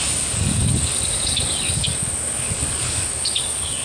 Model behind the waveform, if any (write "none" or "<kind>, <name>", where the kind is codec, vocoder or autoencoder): codec, DAC